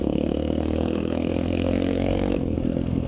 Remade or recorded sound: remade